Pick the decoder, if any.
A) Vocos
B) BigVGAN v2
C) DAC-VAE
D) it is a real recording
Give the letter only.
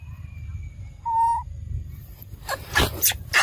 D